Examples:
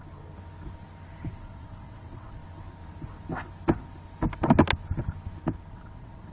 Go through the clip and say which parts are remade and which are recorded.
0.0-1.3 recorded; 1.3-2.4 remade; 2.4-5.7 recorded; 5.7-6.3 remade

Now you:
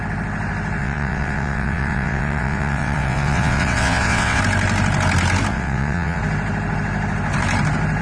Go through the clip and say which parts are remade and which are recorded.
0.0-0.8 recorded; 0.8-4.4 remade; 4.4-5.5 recorded; 5.5-6.2 remade; 6.2-8.0 recorded

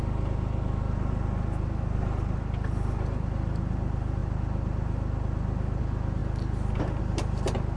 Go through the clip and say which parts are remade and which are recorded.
0.0-7.8 recorded

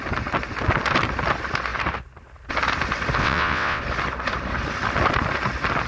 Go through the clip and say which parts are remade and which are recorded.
0.0-3.2 recorded; 3.2-3.8 remade; 3.8-5.9 recorded

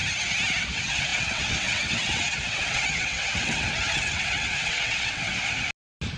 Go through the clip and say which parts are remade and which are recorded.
0.0-0.6 recorded; 0.6-5.3 remade; 5.3-6.2 recorded